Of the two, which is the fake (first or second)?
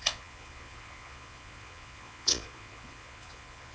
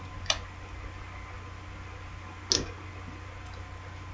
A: first